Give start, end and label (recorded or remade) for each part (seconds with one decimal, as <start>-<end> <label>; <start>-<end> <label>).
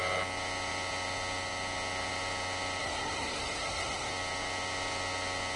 0.0-2.8 recorded; 2.8-4.1 remade; 4.1-5.6 recorded